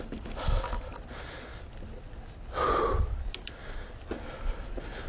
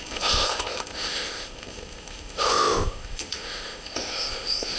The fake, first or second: second